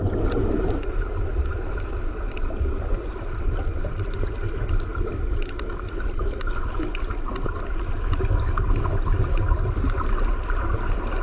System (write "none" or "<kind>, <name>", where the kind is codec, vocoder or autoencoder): none